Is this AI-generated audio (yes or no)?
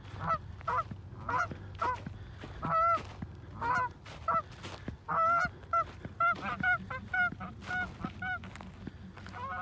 no